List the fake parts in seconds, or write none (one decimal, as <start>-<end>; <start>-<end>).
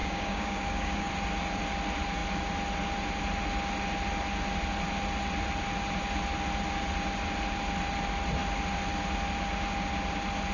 0.0-1.1